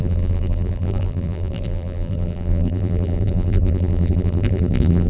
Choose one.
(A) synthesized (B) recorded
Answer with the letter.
A